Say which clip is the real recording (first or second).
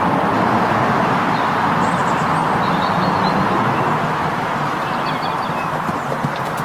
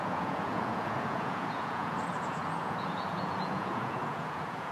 first